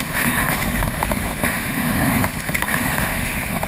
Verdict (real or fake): fake